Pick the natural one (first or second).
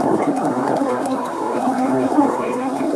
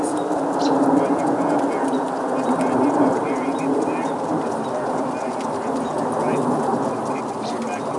second